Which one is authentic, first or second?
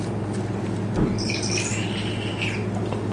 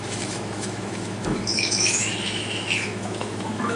first